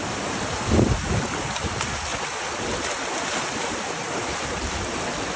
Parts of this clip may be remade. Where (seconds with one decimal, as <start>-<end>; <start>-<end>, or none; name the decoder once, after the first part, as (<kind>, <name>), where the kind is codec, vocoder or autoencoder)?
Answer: none